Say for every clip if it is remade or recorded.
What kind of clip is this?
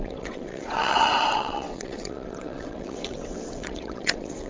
remade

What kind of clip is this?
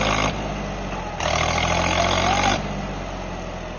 recorded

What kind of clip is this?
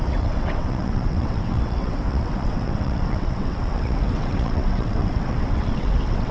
remade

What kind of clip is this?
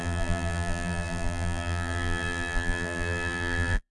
remade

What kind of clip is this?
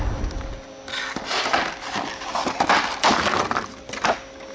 recorded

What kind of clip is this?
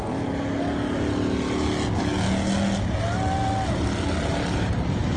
recorded